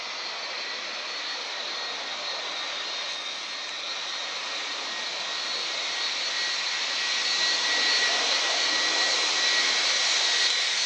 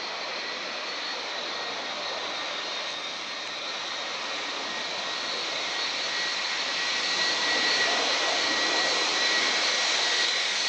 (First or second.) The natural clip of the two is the first